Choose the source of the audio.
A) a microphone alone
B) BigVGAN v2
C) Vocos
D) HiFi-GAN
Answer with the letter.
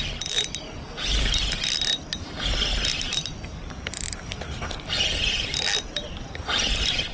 A